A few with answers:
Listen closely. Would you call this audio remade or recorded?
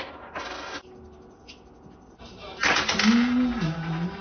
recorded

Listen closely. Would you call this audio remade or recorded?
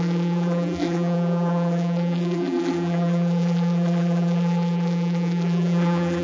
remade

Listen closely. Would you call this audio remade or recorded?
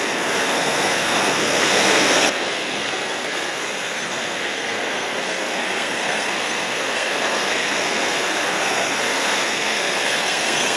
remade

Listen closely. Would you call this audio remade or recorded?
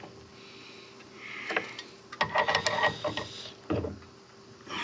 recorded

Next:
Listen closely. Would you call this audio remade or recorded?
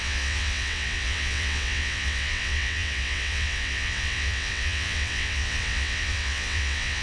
remade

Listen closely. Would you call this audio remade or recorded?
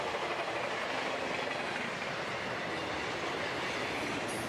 recorded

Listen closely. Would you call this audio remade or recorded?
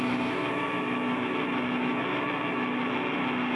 remade